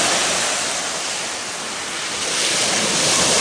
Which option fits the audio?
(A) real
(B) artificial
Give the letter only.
A